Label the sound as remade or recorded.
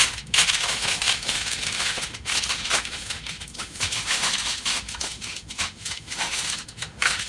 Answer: remade